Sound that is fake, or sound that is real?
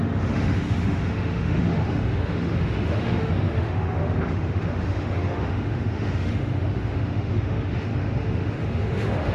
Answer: fake